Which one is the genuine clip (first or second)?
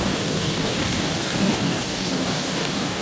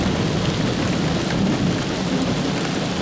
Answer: second